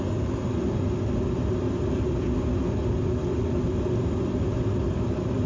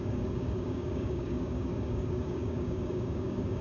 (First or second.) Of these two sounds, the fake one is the second